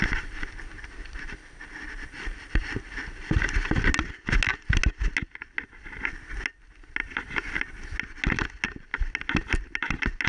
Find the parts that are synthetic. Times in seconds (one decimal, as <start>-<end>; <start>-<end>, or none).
none